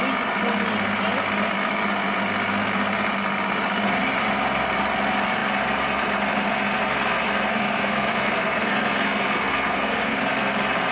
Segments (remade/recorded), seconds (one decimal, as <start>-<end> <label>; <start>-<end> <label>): 0.0-7.5 recorded; 7.5-10.2 remade; 10.2-10.9 recorded